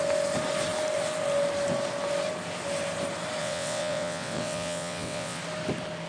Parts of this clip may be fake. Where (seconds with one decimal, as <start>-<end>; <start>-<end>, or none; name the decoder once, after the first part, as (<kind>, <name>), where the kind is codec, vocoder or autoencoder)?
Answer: 3.4-5.4 (vocoder, WaveNeXt)